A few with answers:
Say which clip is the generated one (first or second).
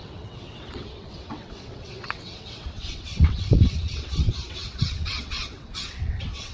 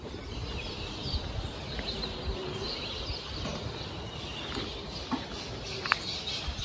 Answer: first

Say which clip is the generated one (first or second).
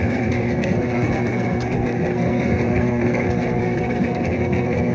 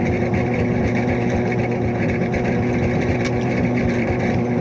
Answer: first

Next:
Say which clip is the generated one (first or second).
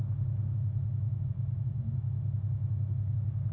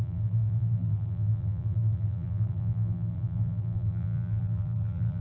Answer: second